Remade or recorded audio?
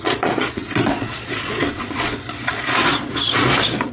remade